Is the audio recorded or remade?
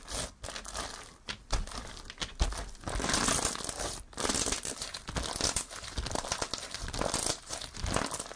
recorded